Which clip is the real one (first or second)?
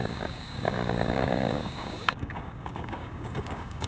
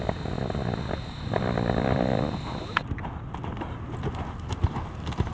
second